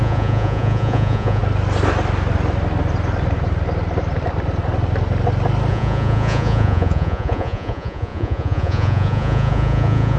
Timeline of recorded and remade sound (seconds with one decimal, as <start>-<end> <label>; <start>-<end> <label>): 0.0-1.4 remade; 1.4-5.7 recorded; 5.7-10.2 remade